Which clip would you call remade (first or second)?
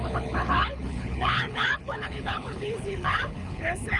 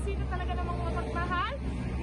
first